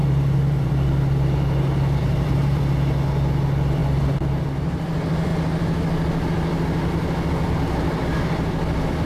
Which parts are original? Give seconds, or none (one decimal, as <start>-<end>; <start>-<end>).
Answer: 0.7-2.0; 2.6-9.1